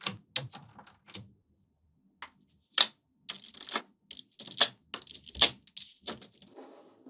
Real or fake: real